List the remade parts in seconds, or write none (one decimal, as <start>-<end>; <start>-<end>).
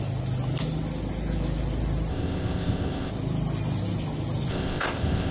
2.1-3.1; 4.5-5.3